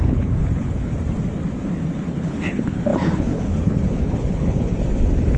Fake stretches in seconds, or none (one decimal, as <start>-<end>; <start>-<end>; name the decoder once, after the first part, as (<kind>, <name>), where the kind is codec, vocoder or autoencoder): 0.0-0.9 (codec, HILCodec); 2.1-4.7